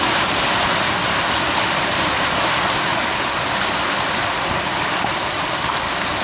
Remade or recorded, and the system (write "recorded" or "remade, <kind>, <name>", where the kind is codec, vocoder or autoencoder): remade, vocoder, BigVGAN v2